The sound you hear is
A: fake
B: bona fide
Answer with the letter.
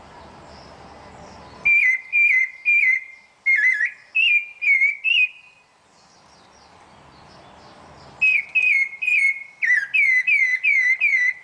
B